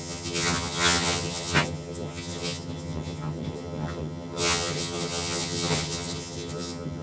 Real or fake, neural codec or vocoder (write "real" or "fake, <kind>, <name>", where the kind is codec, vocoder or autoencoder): fake, vocoder, HiFi-GAN